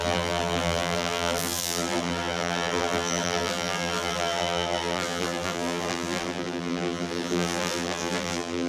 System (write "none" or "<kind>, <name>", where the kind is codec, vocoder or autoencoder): vocoder, BigVGAN v2